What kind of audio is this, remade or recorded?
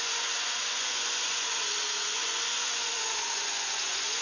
remade